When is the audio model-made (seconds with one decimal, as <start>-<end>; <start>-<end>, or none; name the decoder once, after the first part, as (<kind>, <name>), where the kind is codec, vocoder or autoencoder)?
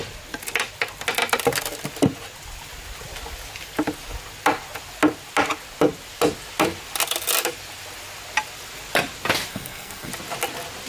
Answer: 9.5-10.1 (codec, SNAC)